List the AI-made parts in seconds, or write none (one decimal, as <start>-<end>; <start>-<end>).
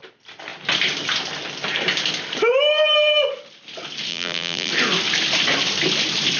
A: 4.1-4.7